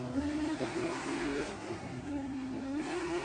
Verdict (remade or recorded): remade